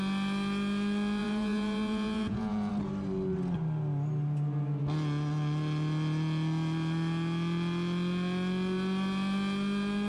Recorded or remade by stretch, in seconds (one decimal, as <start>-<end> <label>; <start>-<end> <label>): 0.0-1.2 recorded; 1.2-2.7 remade; 2.7-10.1 recorded